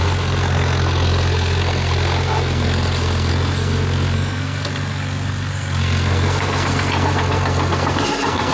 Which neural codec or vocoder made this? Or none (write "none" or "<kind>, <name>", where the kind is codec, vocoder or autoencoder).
codec, SNAC